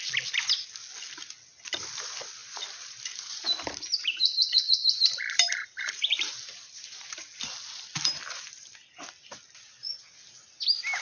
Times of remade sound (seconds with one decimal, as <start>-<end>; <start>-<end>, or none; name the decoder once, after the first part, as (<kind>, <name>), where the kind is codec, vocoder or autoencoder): 2.4-7.2 (vocoder, BigVGAN v2)

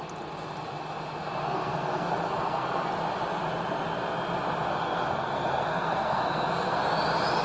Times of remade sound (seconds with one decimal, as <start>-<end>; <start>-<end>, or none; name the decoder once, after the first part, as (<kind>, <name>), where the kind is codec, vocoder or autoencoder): 1.4-2.9 (codec, SNAC); 4.7-6.8

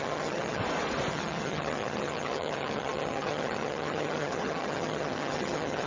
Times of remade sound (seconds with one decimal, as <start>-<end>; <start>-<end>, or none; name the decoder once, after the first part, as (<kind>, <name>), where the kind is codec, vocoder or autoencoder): 0.0-0.6 (vocoder, HiFi-GAN); 1.1-5.9

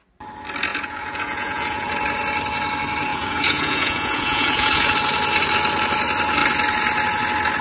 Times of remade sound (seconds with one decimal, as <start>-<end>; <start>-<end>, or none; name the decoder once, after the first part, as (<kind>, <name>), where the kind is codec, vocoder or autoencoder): 0.7-1.9 (vocoder, Vocos); 3.1-4.9

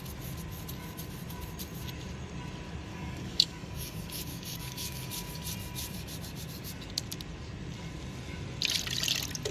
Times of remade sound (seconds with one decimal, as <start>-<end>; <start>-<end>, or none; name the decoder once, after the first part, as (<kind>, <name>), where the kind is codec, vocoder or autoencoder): 2.9-5.1 (codec, DAC)

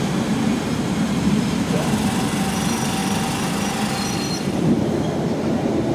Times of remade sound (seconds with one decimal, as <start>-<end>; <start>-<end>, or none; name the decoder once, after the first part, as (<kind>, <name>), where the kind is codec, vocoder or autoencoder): none

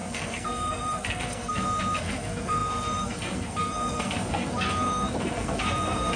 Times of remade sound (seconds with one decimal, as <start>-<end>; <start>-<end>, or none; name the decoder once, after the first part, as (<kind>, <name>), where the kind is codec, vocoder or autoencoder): 0.0-6.2 (codec, SNAC)